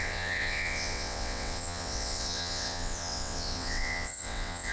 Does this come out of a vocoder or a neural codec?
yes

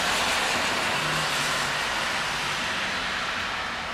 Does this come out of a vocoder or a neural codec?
no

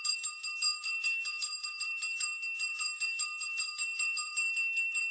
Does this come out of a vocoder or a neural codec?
yes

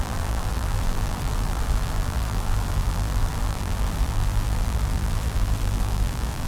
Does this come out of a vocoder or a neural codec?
yes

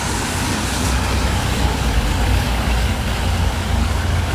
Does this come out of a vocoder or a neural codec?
yes